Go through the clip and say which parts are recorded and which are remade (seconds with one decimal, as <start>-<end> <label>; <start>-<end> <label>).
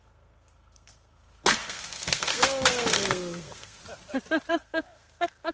0.0-3.8 remade; 3.8-4.5 recorded; 4.5-5.5 remade